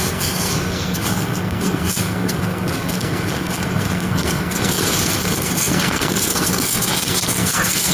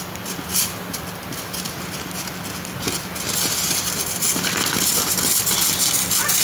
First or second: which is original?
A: second